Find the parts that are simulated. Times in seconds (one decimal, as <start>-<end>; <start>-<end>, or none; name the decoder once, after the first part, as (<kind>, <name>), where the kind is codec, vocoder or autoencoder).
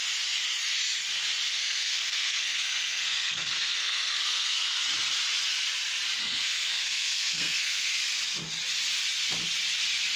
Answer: 1.6-4.8 (codec, SNAC); 6.2-7.9